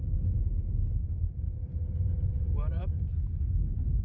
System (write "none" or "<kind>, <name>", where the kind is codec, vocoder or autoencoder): vocoder, BigVGAN v2